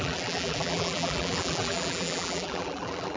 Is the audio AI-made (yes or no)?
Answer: yes